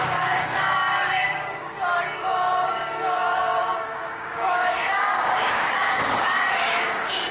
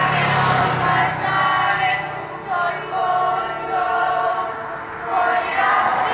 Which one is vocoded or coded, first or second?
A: first